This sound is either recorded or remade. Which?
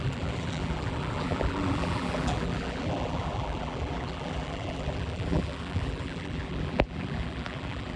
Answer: remade